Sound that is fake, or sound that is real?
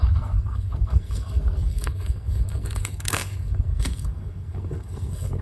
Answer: fake